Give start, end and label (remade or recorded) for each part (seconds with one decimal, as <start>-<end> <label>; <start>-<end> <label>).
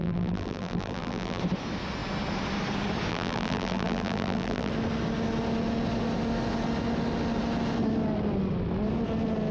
0.0-1.4 remade; 1.4-3.1 recorded; 3.1-4.7 remade; 4.7-9.5 recorded